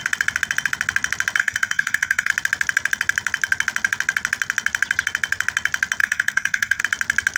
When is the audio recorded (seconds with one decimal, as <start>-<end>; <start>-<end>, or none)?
0.0-1.4; 2.3-6.0; 6.8-7.4